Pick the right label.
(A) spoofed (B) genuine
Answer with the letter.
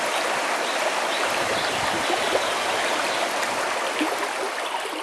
B